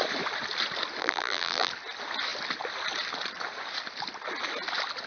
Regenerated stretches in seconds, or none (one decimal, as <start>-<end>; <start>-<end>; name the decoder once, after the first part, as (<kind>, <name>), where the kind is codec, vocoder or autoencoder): 1.0-1.7 (vocoder, BigVGAN v2)